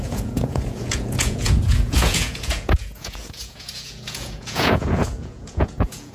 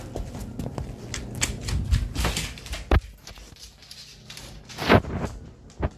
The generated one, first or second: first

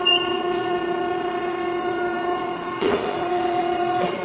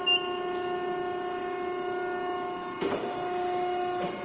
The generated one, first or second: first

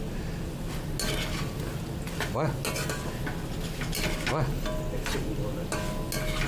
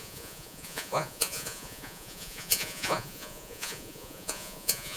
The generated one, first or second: second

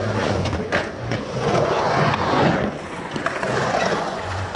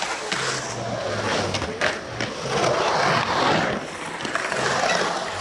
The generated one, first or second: first